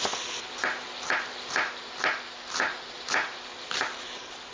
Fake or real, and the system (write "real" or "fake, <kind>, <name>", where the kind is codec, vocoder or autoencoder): real